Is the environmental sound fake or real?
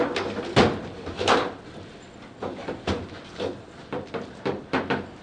real